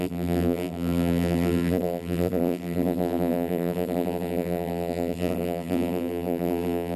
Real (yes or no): no